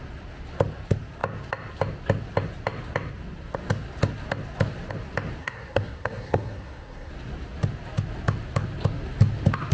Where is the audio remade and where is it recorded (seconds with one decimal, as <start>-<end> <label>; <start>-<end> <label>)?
0.0-5.4 recorded; 5.4-7.1 remade; 7.1-9.7 recorded